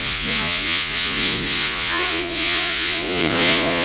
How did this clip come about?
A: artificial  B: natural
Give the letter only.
A